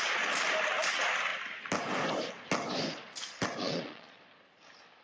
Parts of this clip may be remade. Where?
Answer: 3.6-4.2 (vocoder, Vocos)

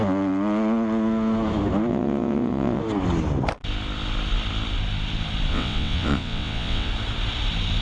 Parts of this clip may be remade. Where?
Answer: 1.9-2.8 (vocoder, WaveNeXt); 5.5-6.9

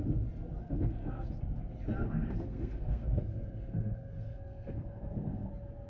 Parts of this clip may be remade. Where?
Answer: 0.6-1.3 (codec, SNAC); 2.0-5.5

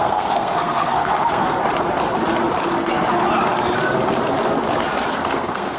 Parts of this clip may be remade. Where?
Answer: 0.0-1.6 (codec, SNAC); 5.1-5.8

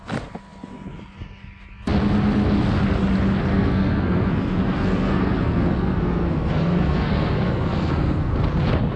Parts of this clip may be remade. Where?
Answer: 3.5-8.3 (codec, SNAC)

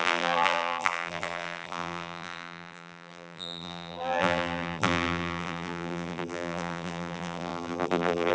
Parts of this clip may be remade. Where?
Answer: 0.0-8.3 (vocoder, BigVGAN v2)

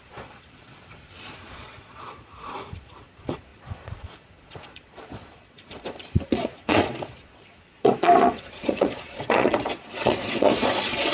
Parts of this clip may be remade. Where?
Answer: 0.0-11.1 (vocoder, Vocos)

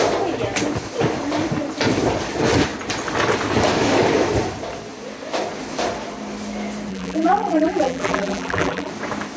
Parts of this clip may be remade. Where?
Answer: 6.9-8.9 (vocoder, BigVGAN v2)